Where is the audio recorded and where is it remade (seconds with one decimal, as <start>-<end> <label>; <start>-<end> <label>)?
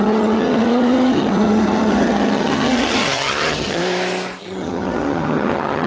0.0-3.8 remade; 3.8-4.4 recorded; 4.4-5.9 remade